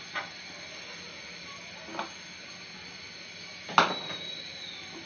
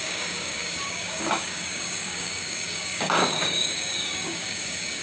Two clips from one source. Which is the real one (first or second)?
first